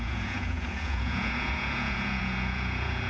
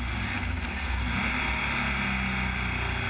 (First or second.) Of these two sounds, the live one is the second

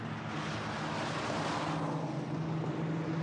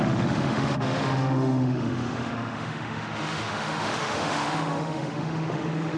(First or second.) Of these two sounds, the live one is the first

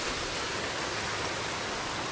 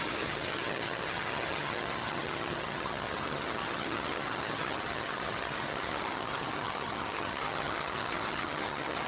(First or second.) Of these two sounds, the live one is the first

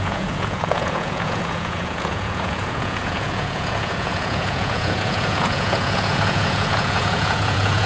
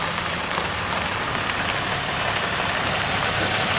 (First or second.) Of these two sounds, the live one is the second